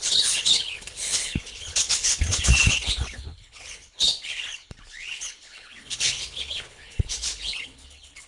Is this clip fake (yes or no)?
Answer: yes